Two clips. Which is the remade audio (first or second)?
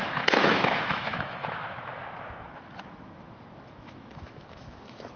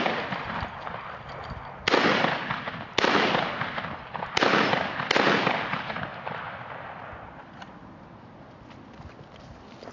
first